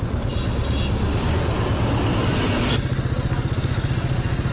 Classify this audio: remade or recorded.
recorded